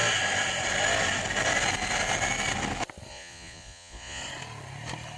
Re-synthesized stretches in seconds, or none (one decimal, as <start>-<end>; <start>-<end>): 3.1-4.2

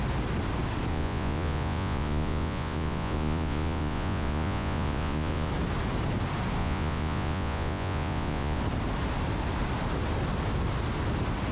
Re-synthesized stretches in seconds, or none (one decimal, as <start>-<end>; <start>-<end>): 0.9-5.5; 6.6-8.6

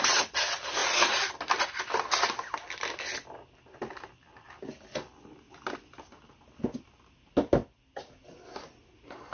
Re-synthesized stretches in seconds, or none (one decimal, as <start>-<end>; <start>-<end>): none